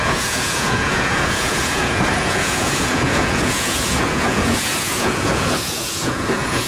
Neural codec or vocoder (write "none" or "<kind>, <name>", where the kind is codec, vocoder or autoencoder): vocoder, Vocos